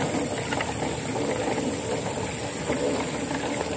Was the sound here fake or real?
real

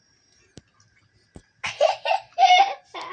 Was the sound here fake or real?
real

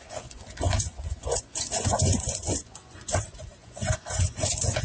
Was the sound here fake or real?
fake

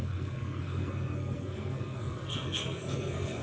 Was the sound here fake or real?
fake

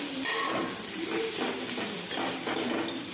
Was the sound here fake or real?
fake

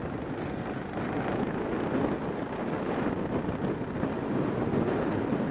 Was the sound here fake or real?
real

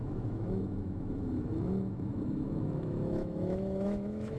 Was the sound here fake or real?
fake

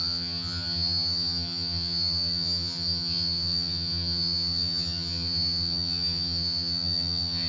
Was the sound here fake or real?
fake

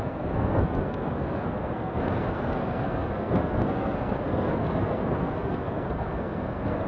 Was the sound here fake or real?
fake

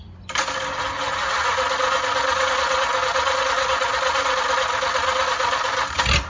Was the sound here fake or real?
real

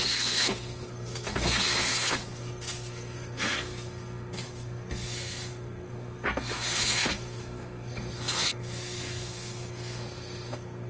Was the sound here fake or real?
fake